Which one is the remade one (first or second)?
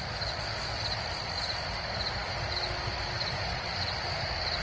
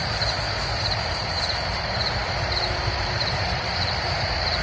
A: second